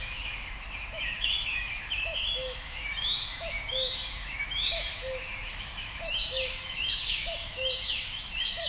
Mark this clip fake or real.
fake